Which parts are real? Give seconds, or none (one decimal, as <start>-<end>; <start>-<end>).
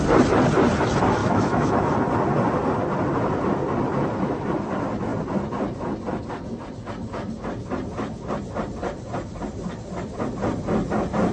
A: 0.0-1.2; 1.7-11.3